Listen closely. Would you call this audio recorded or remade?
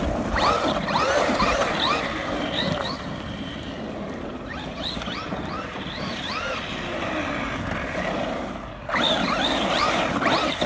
remade